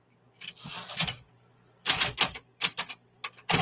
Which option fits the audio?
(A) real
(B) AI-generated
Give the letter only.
A